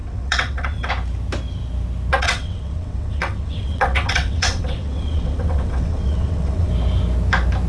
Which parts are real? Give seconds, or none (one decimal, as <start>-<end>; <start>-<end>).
0.9-2.1; 6.7-7.7